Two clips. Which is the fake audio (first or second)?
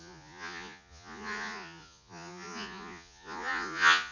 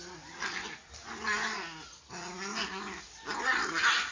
first